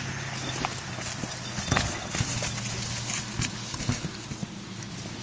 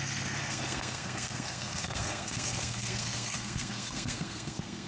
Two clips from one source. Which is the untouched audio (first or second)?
first